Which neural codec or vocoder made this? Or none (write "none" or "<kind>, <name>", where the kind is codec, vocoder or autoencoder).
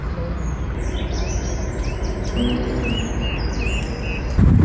none